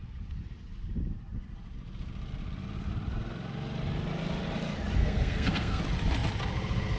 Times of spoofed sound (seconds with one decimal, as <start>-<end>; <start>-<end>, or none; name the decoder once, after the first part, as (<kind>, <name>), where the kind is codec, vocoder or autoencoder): 5.0-5.8 (codec, SNAC)